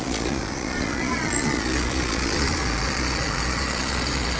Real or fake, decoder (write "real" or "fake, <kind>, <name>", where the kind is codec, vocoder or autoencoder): fake, vocoder, Vocos